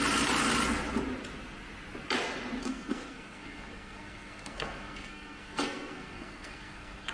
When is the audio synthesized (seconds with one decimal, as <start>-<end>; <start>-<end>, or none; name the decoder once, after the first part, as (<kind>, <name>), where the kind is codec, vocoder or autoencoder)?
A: 2.6-7.1 (codec, SNAC)